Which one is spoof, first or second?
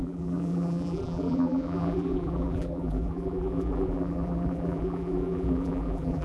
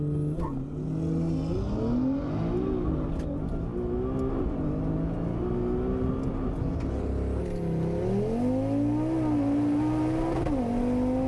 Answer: first